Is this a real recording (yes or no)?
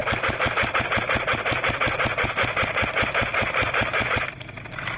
no